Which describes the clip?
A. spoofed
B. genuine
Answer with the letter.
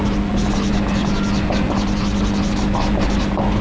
B